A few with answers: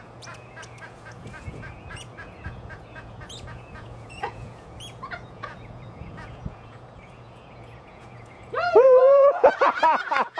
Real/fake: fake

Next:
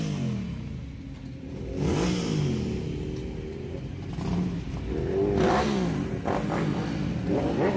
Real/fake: real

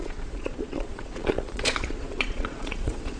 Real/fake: fake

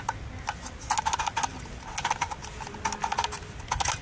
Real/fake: real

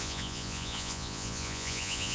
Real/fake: fake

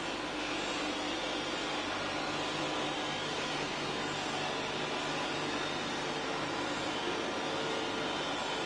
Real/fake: real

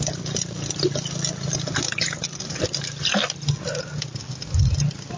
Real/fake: real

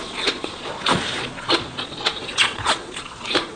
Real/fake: fake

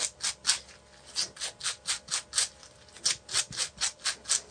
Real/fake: real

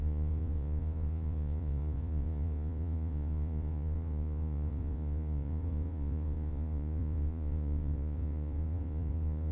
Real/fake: fake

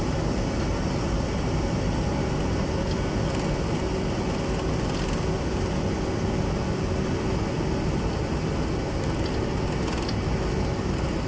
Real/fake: real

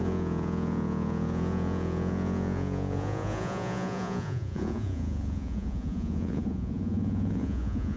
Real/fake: fake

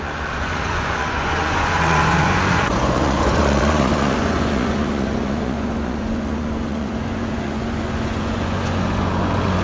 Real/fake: fake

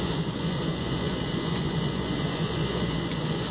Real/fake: fake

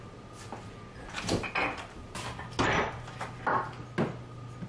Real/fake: real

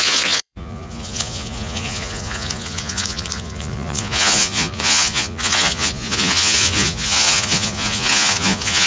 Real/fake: fake